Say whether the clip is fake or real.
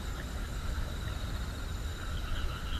real